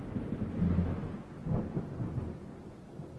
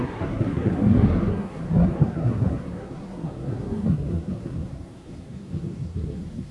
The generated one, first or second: second